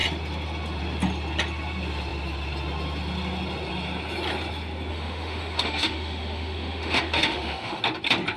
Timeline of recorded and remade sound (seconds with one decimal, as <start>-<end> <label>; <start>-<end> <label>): 0.0-4.9 recorded; 4.9-7.8 remade; 7.8-8.4 recorded